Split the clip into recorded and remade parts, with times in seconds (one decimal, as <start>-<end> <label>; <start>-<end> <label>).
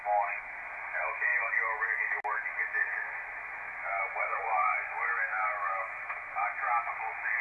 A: 0.0-4.4 recorded; 4.4-5.1 remade; 5.1-7.4 recorded